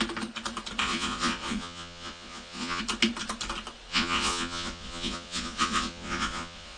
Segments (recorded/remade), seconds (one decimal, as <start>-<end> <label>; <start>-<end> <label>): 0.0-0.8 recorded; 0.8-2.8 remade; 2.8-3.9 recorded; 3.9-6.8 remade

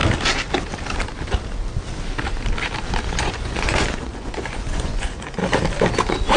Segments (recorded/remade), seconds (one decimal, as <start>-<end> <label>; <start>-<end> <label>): 0.0-3.0 recorded; 3.0-5.4 remade; 5.4-6.4 recorded

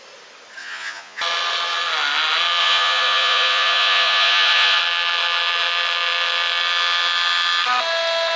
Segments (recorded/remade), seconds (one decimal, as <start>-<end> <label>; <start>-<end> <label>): 0.0-0.6 recorded; 0.6-1.2 remade; 1.2-2.6 recorded; 2.6-4.8 remade; 4.8-8.4 recorded

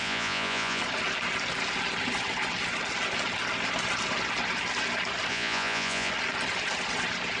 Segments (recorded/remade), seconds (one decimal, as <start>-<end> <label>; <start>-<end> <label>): 0.0-0.8 remade; 0.8-5.3 recorded; 5.3-6.1 remade; 6.1-7.4 recorded